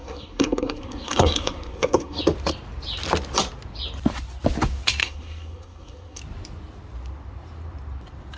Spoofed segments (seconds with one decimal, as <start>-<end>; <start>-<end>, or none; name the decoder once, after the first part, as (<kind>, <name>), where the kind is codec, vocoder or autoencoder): 0.0-2.2 (codec, SNAC); 5.0-6.2